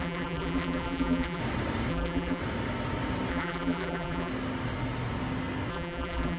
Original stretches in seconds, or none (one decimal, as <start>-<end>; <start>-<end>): 1.4-1.9; 2.4-3.3; 4.3-5.7